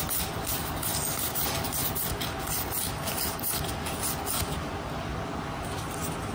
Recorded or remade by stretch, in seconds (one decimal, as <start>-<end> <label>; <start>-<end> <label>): 0.0-6.3 recorded